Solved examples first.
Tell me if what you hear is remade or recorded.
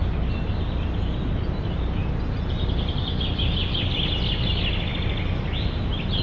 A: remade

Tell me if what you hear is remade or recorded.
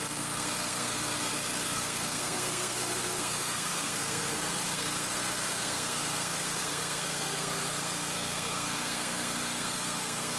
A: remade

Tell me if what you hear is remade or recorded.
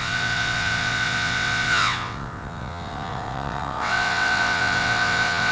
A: remade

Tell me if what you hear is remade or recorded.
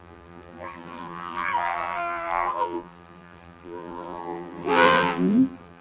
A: remade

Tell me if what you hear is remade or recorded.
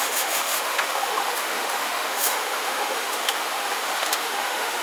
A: remade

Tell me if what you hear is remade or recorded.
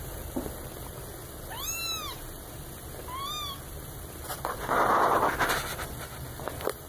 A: recorded